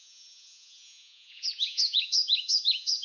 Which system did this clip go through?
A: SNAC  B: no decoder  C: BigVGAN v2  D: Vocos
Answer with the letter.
D